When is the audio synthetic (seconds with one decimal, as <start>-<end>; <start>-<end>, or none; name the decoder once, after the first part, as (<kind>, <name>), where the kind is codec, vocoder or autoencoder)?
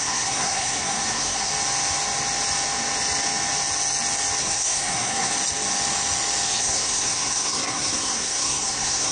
0.0-1.5 (codec, SNAC); 4.4-5.3; 6.6-9.1